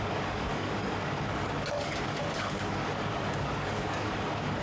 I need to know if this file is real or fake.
fake